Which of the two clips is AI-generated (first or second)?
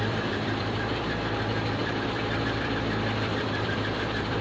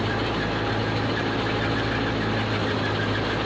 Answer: first